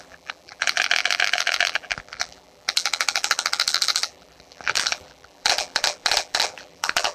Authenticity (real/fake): fake